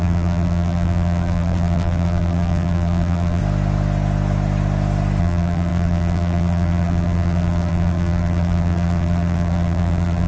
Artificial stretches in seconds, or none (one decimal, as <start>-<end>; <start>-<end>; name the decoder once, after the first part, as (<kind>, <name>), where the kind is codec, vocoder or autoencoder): 0.0-3.4 (vocoder, BigVGAN v2); 5.2-10.3